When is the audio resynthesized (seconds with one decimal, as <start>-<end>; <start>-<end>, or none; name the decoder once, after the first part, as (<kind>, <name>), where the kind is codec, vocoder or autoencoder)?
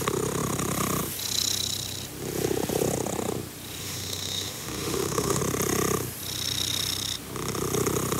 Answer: 3.8-5.4 (autoencoder, DAC-VAE)